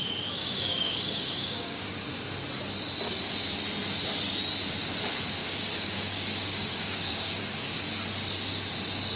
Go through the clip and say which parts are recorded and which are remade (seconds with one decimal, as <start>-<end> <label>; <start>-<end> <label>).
0.0-0.4 recorded; 0.4-1.8 remade; 1.8-5.4 recorded; 5.4-7.4 remade; 7.4-9.2 recorded